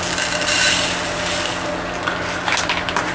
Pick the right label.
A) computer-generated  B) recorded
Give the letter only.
B